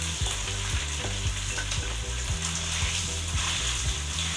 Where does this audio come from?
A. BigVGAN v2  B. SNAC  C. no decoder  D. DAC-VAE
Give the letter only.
A